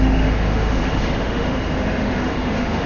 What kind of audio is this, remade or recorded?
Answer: remade